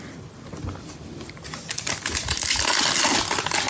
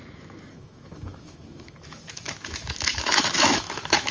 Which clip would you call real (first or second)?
first